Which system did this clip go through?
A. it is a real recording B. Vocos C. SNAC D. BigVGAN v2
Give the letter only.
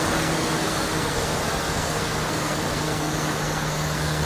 C